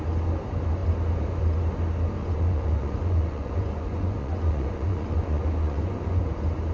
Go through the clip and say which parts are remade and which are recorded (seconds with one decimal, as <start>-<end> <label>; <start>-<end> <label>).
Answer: 0.0-2.2 recorded; 2.2-6.2 remade; 6.2-6.7 recorded

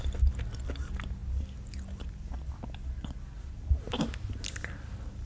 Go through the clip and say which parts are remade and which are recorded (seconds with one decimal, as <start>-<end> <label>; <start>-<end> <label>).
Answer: 0.0-5.3 recorded

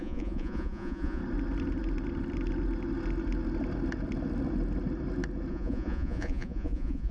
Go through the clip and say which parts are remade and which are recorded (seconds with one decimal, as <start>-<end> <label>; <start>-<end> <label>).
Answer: 0.0-1.2 remade; 1.2-5.5 recorded; 5.5-7.1 remade

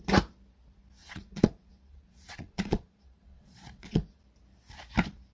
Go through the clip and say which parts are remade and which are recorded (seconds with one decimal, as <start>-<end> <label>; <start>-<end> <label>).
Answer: 0.0-1.0 recorded; 1.0-4.2 remade; 4.2-5.3 recorded

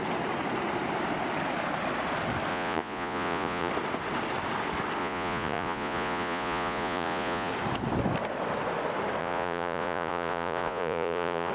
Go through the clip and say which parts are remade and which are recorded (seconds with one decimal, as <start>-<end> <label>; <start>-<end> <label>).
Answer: 0.0-2.5 recorded; 2.5-3.7 remade; 3.7-5.0 recorded; 5.0-7.5 remade; 7.5-9.2 recorded; 9.2-11.5 remade

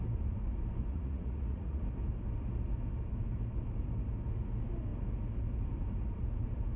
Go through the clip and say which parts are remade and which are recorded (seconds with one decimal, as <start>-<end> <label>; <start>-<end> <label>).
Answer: 0.0-0.9 recorded; 0.9-1.8 remade; 1.8-6.8 recorded

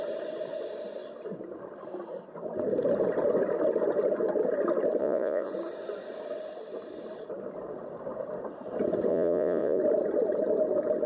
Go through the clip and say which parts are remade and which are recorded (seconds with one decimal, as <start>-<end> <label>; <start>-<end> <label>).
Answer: 0.0-5.0 recorded; 5.0-5.5 remade; 5.5-9.1 recorded; 9.1-9.8 remade; 9.8-11.1 recorded